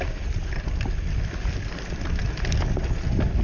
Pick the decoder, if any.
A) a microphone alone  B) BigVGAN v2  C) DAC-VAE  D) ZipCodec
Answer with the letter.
A